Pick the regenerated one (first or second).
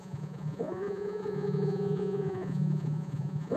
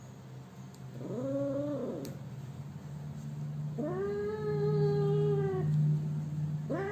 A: first